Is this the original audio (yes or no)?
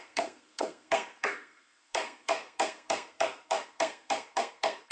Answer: no